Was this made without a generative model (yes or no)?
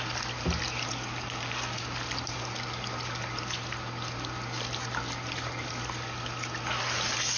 yes